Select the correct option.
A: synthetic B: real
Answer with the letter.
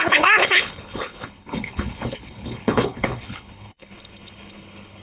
A